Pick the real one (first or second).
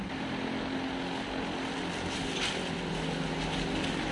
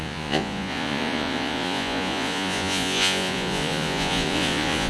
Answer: first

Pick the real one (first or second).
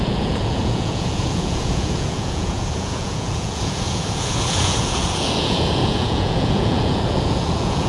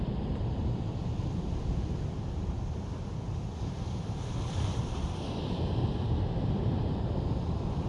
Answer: second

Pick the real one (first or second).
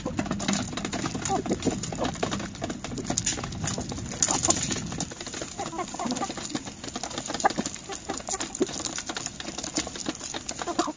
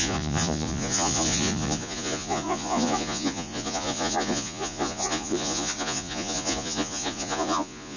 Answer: first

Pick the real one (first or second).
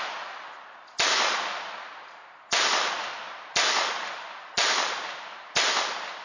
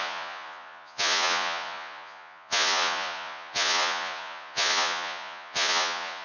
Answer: first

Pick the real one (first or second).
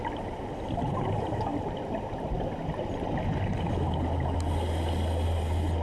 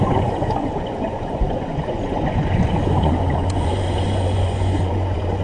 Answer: first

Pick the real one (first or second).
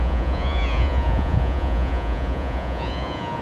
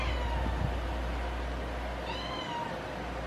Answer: second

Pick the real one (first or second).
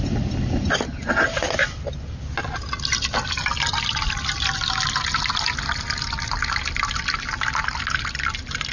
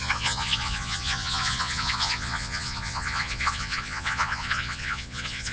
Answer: first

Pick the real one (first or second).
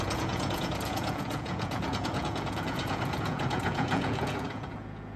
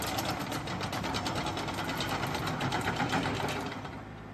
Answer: second